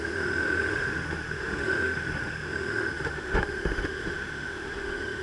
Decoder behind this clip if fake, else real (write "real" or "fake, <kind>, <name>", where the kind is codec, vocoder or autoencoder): fake, autoencoder, DAC-VAE